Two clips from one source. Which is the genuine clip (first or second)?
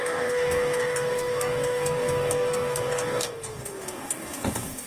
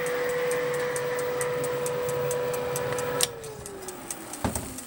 second